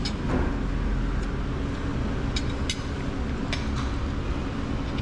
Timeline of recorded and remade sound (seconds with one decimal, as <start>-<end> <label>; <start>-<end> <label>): 0.0-5.0 recorded